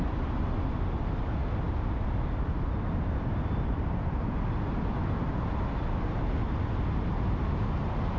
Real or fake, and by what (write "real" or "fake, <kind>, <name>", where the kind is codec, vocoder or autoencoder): real